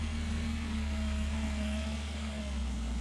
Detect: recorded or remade remade